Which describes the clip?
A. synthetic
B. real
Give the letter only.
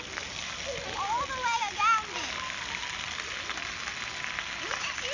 B